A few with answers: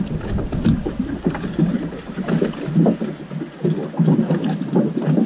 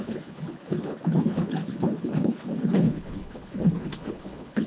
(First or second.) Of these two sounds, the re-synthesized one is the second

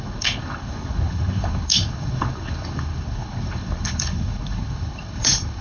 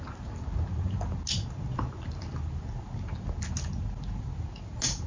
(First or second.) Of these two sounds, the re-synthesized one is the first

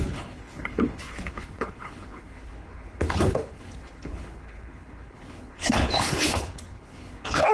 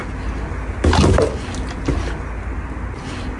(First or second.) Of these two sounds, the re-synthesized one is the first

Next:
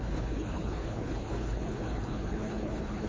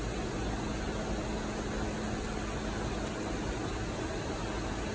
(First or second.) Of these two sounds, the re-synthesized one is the first